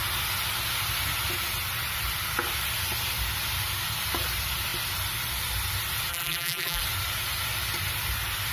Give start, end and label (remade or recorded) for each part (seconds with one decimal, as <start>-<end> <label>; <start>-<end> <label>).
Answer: 0.0-6.1 recorded; 6.1-6.8 remade; 6.8-8.5 recorded